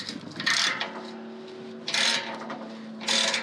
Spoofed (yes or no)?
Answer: no